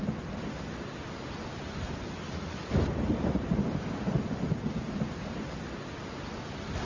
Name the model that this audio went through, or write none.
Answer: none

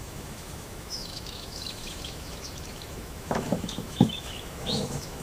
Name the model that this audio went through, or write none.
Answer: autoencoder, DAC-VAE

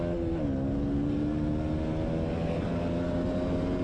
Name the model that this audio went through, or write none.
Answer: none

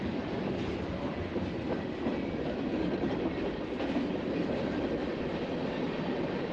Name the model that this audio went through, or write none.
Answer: none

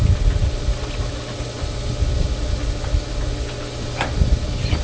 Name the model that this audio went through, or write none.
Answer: none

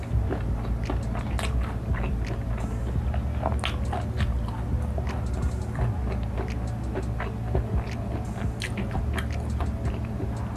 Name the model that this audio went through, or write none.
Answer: none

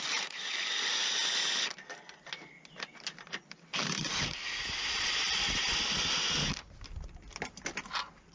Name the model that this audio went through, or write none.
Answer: none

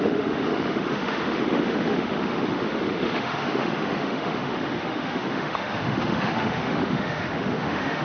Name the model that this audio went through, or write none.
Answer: autoencoder, DAC-VAE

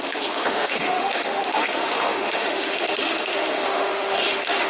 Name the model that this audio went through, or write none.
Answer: autoencoder, DAC-VAE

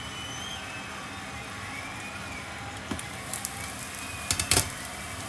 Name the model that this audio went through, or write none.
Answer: none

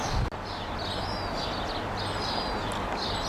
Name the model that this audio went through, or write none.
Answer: none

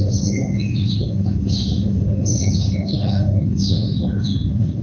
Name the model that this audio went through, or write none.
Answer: autoencoder, DAC-VAE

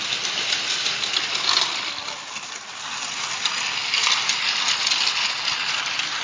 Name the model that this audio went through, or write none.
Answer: none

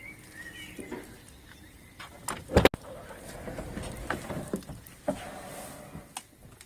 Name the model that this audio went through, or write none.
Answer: none